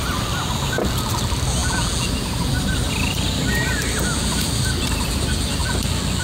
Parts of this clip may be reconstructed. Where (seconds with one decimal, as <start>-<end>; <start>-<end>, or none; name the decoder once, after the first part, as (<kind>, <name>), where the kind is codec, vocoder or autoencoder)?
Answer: 0.0-1.6 (vocoder, BigVGAN v2); 2.5-5.6